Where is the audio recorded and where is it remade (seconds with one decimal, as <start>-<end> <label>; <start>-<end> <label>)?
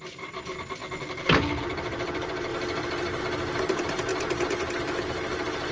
0.0-0.8 remade; 0.8-1.6 recorded; 1.6-4.1 remade; 4.1-4.8 recorded; 4.8-5.7 remade